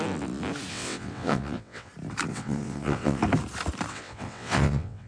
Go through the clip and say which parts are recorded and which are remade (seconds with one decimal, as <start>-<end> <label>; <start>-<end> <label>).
0.0-0.7 recorded; 0.7-1.9 remade; 1.9-2.3 recorded; 2.3-3.2 remade; 3.2-3.9 recorded; 3.9-5.1 remade

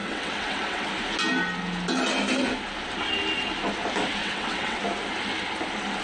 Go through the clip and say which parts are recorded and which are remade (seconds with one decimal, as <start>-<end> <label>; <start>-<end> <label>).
0.0-0.9 remade; 0.9-4.2 recorded; 4.2-4.8 remade; 4.8-6.0 recorded

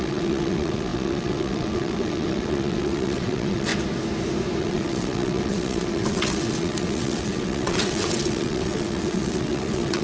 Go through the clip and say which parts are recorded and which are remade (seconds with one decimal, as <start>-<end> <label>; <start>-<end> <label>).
0.0-3.7 remade; 3.7-4.6 recorded; 4.6-10.0 remade

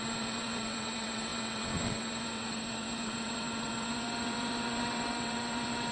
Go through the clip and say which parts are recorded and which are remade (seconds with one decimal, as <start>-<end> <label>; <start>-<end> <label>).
0.0-5.9 remade

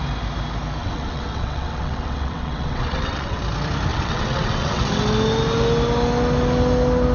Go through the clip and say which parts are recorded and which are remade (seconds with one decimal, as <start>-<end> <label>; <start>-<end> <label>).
0.0-0.8 recorded; 0.8-3.4 remade; 3.4-3.9 recorded; 3.9-4.8 remade; 4.8-7.1 recorded

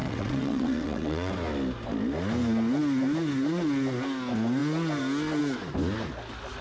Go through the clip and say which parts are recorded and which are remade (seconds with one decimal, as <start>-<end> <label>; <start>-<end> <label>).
0.0-1.3 remade; 1.3-6.6 recorded

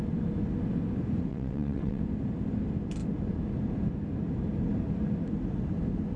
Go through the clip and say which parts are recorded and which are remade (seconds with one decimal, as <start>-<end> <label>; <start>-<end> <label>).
0.0-1.3 recorded; 1.3-2.0 remade; 2.0-6.2 recorded